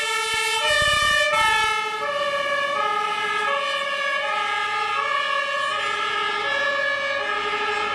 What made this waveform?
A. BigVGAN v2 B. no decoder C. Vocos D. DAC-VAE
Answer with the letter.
B